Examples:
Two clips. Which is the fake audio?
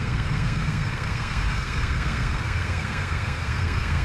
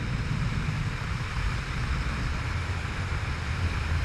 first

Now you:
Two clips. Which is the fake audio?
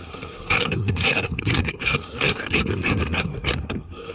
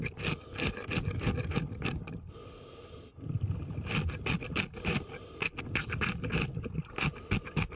first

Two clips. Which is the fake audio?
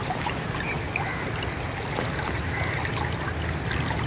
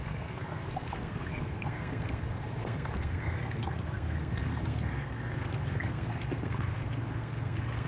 second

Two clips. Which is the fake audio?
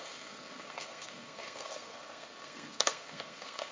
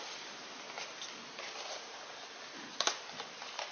first